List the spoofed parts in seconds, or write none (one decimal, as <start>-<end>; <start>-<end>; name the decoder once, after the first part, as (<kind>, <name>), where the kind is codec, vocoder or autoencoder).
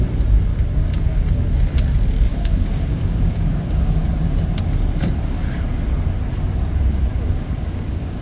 0.5-1.5 (codec, DAC); 2.3-4.1; 7.1-8.2